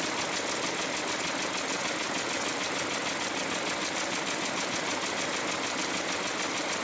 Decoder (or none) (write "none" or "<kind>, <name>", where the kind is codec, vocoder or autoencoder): none